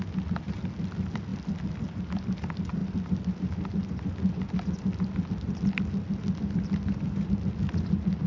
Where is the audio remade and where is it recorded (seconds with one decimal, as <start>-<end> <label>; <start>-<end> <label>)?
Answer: 0.0-8.3 recorded